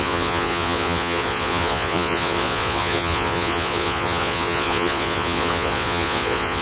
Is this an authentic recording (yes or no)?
no